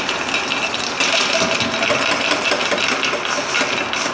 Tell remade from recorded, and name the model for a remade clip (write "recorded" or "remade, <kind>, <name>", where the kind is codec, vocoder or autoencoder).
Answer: recorded